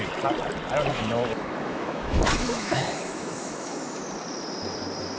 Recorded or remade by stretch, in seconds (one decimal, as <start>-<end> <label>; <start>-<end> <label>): 0.0-0.9 recorded; 0.9-4.0 remade; 4.0-5.2 recorded

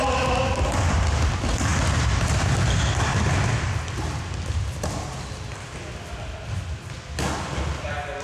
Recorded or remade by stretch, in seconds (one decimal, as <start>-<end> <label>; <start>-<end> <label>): 0.0-8.2 recorded